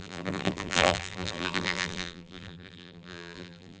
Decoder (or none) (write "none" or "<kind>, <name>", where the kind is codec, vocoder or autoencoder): vocoder, BigVGAN v2